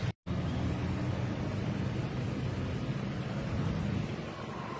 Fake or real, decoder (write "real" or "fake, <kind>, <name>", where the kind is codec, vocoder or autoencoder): real